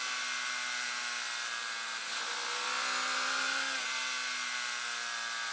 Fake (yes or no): no